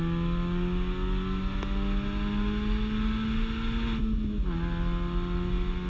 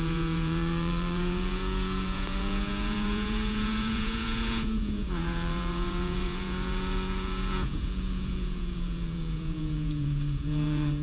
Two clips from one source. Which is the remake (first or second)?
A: second